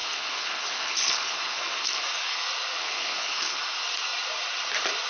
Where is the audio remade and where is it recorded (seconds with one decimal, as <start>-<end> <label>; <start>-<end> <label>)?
0.0-2.0 remade; 2.0-2.8 recorded; 2.8-3.6 remade; 3.6-5.1 recorded